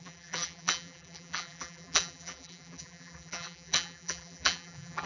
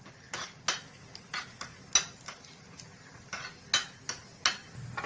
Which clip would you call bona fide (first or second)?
second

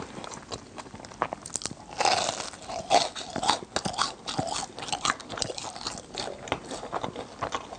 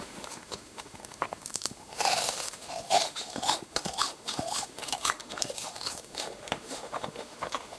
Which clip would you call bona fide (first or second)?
first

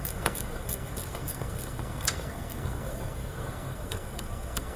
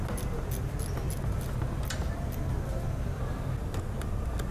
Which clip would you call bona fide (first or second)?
second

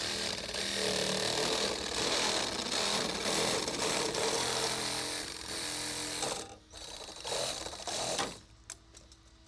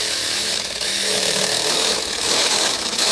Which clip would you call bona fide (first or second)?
first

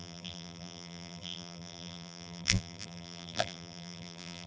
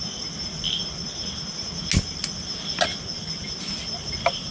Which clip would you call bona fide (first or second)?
second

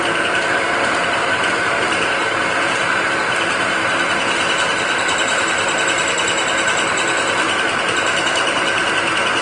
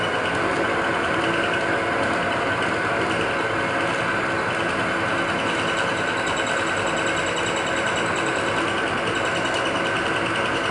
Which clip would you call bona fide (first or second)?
second